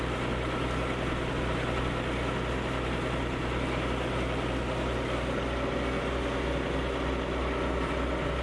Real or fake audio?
real